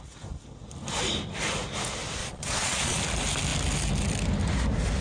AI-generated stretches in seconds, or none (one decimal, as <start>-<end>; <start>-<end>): 2.2-3.0